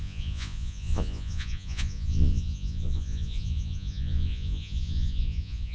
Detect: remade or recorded remade